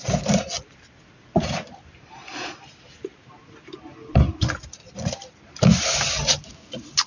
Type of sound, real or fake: real